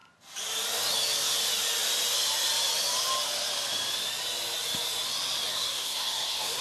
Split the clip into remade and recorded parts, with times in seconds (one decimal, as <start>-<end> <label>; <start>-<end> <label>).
0.0-5.5 recorded; 5.5-6.6 remade